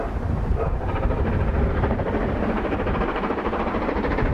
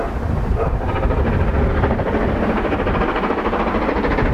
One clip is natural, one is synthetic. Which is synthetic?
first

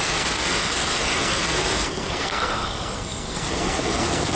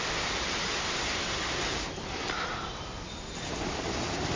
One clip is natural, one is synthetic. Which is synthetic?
first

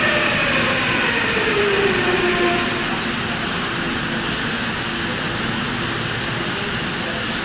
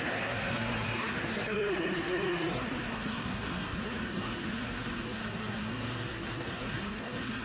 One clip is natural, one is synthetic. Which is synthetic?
second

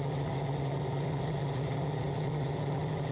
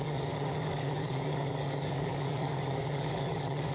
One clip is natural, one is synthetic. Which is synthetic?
second